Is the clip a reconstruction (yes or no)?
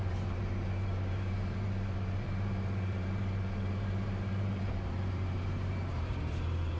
yes